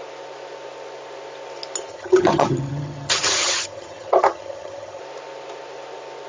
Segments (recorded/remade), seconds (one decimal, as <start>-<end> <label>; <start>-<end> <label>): 0.0-1.9 recorded; 1.9-5.0 remade; 5.0-6.3 recorded